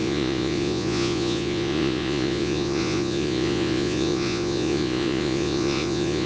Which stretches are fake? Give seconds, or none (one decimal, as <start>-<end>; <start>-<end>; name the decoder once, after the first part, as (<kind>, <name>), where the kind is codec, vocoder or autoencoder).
0.0-6.3 (vocoder, Vocos)